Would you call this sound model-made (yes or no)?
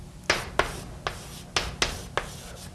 no